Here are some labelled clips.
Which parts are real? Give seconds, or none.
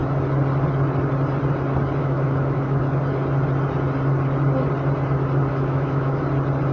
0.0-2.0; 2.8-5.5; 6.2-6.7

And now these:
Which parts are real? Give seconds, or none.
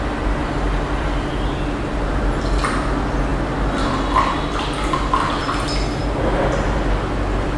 0.0-0.4; 1.3-5.4; 6.0-7.6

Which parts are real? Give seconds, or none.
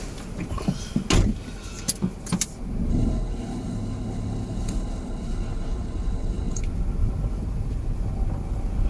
0.0-2.9; 6.6-8.9